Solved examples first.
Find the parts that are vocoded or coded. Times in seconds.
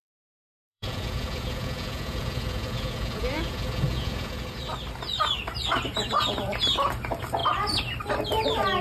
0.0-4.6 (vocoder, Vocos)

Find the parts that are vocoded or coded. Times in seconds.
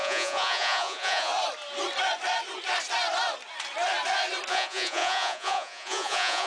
0.0-1.3 (vocoder, Vocos); 4.5-6.5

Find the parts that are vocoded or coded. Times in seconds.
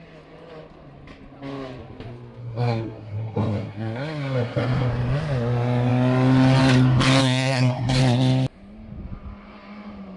2.4-4.9 (codec, SNAC); 7.2-8.0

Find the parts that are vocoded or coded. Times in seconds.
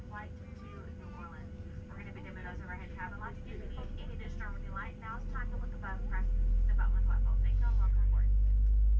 2.4-2.9 (vocoder, BigVGAN v2)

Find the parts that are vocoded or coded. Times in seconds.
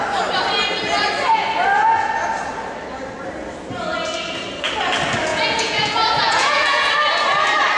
5.3-6.9 (vocoder, Vocos)